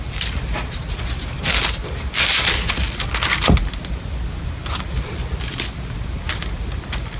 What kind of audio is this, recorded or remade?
recorded